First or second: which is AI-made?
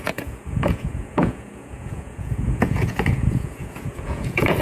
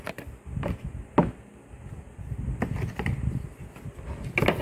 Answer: first